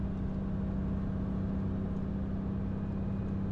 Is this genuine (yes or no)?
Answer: yes